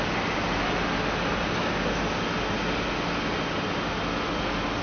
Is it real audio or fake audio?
real